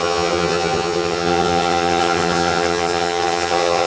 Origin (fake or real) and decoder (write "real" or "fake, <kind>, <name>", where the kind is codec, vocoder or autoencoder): fake, vocoder, HiFi-GAN